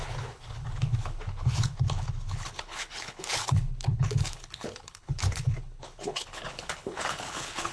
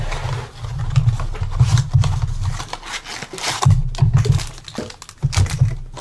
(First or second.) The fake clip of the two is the first